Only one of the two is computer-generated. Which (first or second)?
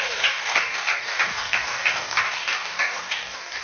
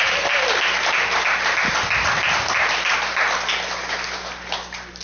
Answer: first